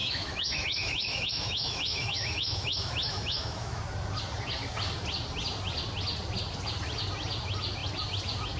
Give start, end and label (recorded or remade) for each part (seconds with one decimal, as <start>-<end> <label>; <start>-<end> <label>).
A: 0.0-3.8 remade; 3.8-8.6 recorded